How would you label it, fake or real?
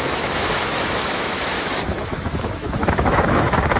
fake